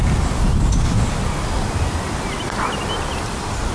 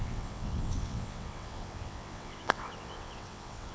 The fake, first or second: second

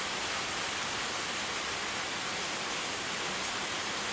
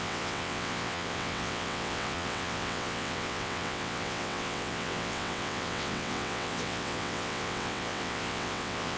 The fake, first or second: second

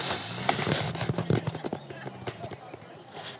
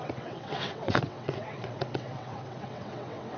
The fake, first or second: second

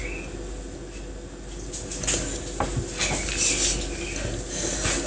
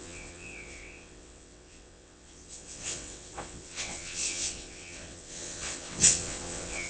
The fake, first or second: second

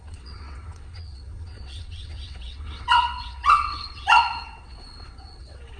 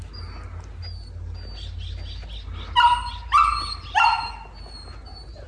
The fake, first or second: first